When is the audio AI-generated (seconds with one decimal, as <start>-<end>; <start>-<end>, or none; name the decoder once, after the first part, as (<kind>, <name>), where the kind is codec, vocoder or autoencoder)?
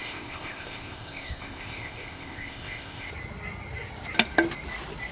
0.0-3.1 (codec, ZipCodec)